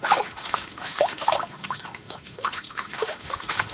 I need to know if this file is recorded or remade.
remade